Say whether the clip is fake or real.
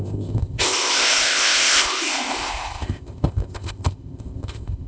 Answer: fake